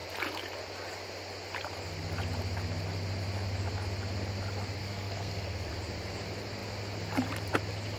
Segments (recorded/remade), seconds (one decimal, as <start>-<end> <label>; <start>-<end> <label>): 0.0-4.8 recorded; 4.8-5.7 remade; 5.7-8.0 recorded